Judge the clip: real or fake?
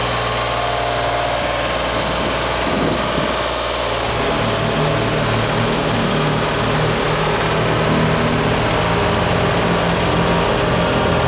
real